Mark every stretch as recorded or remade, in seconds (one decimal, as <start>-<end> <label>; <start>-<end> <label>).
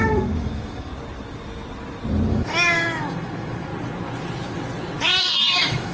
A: 0.0-0.9 remade; 0.9-2.3 recorded; 2.3-3.7 remade; 3.7-5.2 recorded; 5.2-5.9 remade